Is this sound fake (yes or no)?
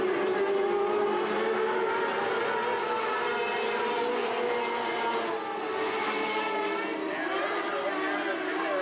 no